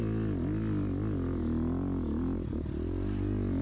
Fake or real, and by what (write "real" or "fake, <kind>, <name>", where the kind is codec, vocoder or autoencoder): real